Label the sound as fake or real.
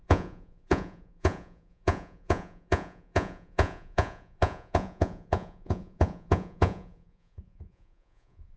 fake